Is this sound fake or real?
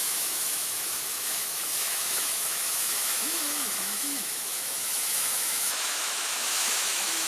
fake